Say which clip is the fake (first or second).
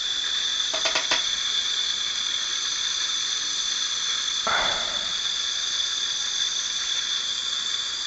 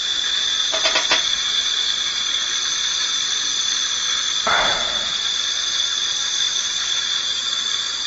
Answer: first